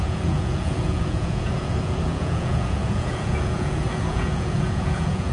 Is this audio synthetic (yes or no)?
yes